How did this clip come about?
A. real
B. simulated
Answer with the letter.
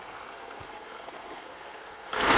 B